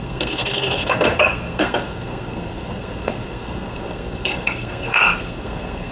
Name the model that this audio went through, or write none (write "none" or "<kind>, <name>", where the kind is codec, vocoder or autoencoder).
codec, SNAC